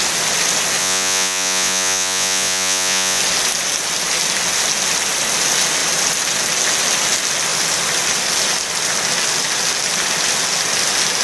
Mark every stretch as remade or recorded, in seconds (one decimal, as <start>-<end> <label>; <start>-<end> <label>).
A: 0.0-0.8 recorded; 0.8-3.2 remade; 3.2-11.2 recorded